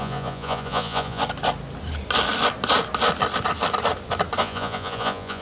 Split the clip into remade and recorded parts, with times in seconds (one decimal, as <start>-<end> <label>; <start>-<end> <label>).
0.0-1.2 remade; 1.2-4.4 recorded; 4.4-5.4 remade